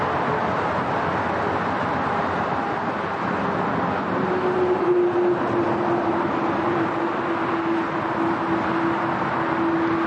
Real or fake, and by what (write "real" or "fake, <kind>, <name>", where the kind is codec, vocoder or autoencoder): real